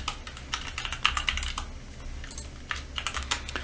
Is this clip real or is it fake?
real